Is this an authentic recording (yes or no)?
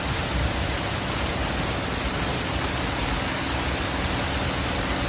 yes